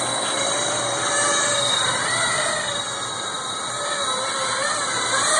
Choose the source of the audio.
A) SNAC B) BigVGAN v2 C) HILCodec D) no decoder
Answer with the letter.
B